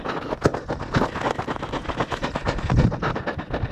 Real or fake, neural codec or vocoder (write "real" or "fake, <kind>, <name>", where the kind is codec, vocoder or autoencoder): real